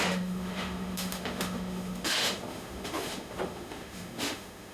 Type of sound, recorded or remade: remade